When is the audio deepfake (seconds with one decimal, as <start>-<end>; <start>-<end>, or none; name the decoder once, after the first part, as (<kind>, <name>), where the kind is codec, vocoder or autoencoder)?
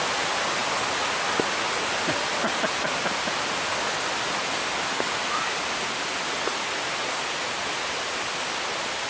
none